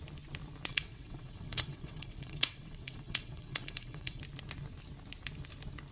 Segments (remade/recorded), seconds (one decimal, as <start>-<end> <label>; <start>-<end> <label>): 0.0-0.7 recorded; 0.7-4.2 remade; 4.2-5.9 recorded